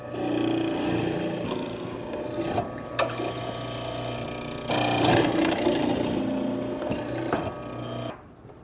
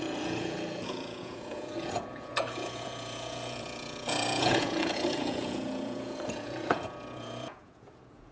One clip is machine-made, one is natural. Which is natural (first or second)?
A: first